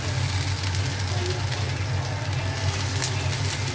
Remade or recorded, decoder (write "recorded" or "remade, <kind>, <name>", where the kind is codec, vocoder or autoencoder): recorded